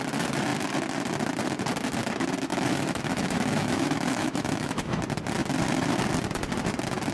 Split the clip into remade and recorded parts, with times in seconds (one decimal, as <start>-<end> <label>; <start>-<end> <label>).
0.0-2.5 recorded; 2.5-5.0 remade; 5.0-7.1 recorded